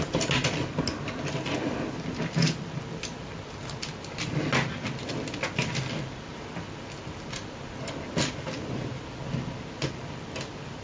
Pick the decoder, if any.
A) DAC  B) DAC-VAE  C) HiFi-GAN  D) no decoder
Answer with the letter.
D